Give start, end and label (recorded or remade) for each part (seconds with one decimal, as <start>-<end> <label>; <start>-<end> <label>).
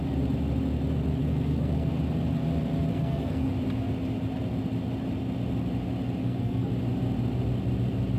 0.0-1.2 recorded; 1.2-1.9 remade; 1.9-2.9 recorded; 2.9-3.5 remade; 3.5-6.2 recorded; 6.2-6.7 remade; 6.7-8.2 recorded